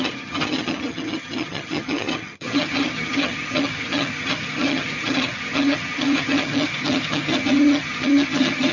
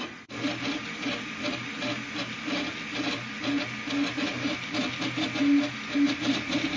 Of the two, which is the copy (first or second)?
first